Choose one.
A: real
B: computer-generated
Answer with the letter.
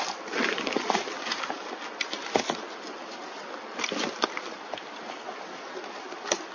A